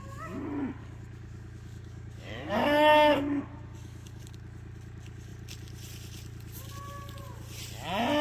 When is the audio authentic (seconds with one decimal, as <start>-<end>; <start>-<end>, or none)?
0.0-0.8; 4.2-8.2